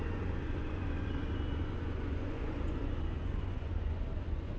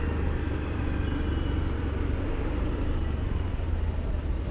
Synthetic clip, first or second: first